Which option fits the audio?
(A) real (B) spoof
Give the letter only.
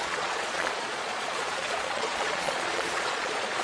B